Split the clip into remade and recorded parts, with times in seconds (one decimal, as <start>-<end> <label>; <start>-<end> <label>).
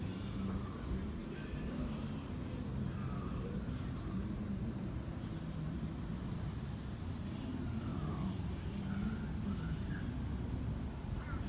0.0-11.5 recorded